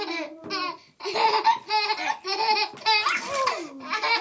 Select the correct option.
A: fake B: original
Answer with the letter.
B